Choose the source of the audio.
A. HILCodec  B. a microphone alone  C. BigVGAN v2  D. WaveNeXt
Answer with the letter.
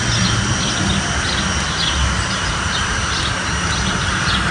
B